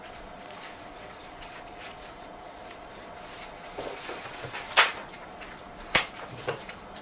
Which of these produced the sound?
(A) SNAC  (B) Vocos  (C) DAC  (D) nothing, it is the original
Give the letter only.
B